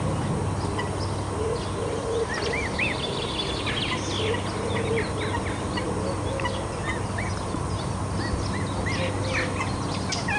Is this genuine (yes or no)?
yes